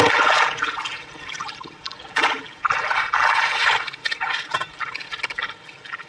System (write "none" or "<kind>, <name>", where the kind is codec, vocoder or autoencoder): none